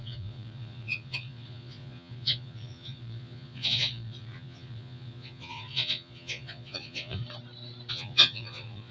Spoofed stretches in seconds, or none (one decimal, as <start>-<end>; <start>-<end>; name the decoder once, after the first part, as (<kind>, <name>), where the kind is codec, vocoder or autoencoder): 0.0-7.2 (vocoder, Vocos); 7.9-8.9